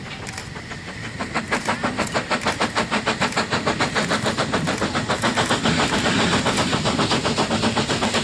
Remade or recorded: recorded